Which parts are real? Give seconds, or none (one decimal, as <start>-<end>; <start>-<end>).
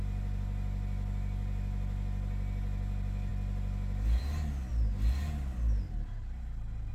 0.0-6.9